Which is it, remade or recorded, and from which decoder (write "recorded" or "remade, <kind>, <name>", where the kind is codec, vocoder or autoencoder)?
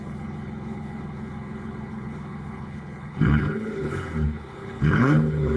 remade, codec, HILCodec